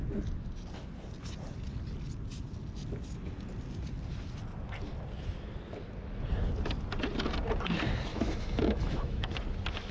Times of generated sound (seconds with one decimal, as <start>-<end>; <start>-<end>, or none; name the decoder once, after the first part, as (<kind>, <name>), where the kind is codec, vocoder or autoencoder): 8.1-9.4 (autoencoder, DAC-VAE)